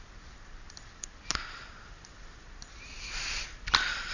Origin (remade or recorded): recorded